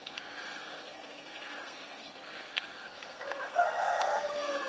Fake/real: fake